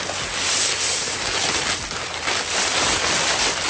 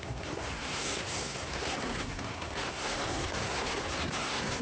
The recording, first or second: first